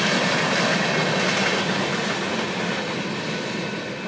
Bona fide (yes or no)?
yes